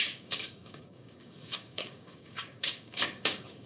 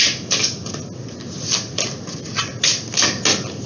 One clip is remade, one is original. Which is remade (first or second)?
first